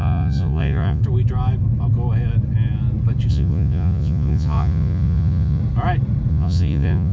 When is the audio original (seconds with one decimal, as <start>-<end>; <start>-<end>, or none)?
1.0-3.3; 5.6-6.3